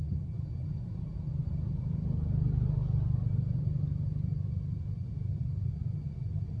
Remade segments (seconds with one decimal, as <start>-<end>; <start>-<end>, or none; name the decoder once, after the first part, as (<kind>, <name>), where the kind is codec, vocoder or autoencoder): none